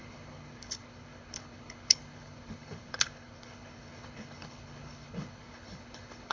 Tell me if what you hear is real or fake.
fake